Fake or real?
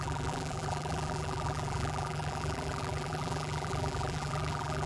fake